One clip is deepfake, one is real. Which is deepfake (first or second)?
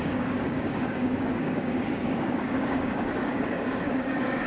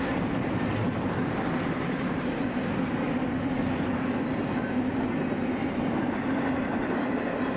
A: first